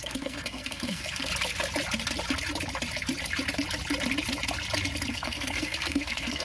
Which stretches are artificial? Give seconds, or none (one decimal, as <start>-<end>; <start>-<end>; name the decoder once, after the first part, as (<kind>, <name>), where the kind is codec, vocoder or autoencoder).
0.0-1.3 (codec, SNAC); 5.1-6.4